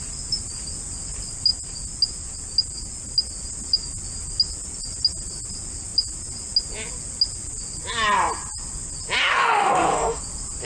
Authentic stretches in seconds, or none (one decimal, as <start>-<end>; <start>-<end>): 0.0-9.4; 10.2-10.6